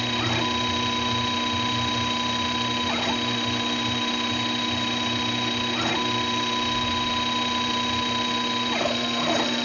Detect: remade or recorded recorded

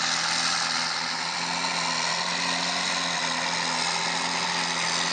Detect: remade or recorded recorded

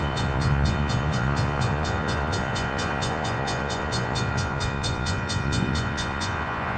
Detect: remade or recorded remade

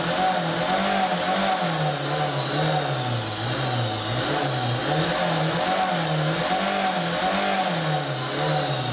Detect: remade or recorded recorded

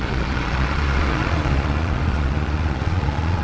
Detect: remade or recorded remade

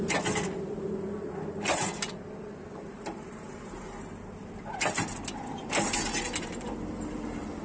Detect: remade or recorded recorded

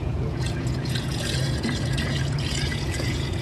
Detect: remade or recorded remade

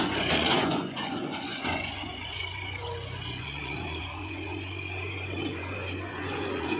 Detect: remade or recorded remade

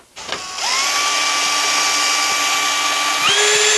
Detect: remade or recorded recorded